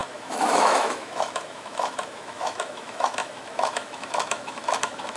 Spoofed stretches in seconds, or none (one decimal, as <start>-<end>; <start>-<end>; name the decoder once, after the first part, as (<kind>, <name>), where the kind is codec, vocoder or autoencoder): 0.0-5.2 (autoencoder, DAC-VAE)